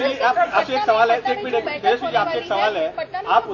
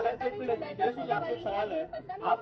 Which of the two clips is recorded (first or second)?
first